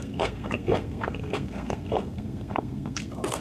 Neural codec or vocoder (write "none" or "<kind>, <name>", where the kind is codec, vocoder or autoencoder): codec, SNAC